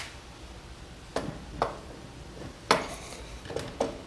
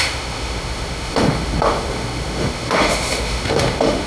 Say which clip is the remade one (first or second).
second